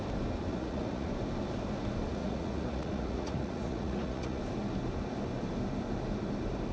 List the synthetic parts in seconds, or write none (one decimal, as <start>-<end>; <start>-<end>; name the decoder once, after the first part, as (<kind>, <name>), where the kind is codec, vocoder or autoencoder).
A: 0.5-1.1 (vocoder, Vocos); 2.2-4.4